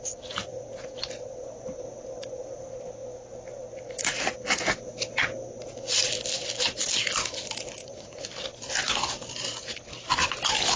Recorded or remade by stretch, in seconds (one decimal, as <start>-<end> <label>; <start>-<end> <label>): 0.0-7.8 recorded; 7.8-8.3 remade; 8.3-10.8 recorded